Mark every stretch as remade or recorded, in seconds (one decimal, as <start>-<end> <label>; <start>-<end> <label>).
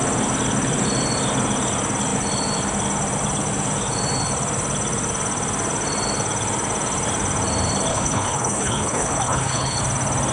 0.0-7.9 recorded; 7.9-9.8 remade; 9.8-10.3 recorded